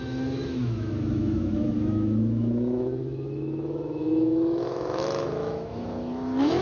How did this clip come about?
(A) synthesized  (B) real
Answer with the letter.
A